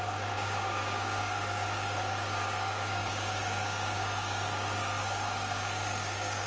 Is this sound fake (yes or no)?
yes